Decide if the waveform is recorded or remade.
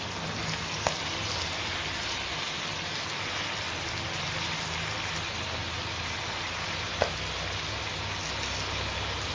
recorded